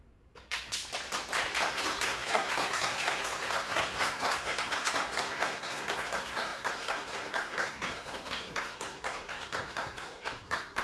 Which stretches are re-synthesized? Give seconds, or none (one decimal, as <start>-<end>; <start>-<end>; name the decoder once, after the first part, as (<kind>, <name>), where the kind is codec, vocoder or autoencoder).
0.0-0.8 (codec, SNAC); 1.7-10.8